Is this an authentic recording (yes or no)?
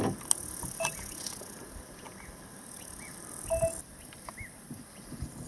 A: yes